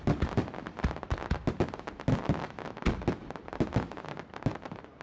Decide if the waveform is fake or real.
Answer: real